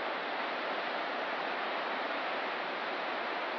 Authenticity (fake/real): fake